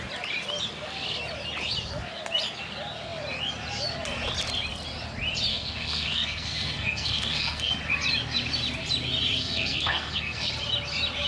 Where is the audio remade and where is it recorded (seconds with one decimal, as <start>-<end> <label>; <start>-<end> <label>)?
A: 0.0-5.5 recorded; 5.5-7.7 remade; 7.7-9.4 recorded; 9.4-10.5 remade; 10.5-11.3 recorded